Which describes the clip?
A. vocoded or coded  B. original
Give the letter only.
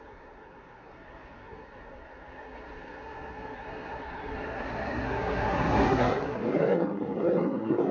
A